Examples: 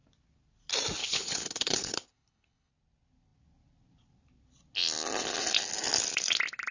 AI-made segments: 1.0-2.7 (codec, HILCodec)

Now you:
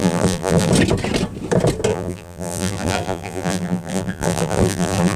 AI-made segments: 0.0-0.7 (vocoder, BigVGAN v2); 1.9-5.2

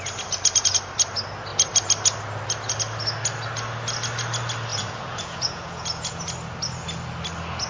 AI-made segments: 4.7-6.2 (vocoder, Vocos)

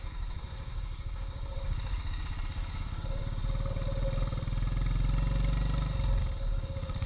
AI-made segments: 0.0-3.4 (codec, DAC); 6.2-7.1

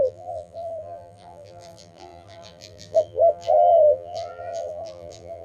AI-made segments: 0.0-5.4 (vocoder, BigVGAN v2)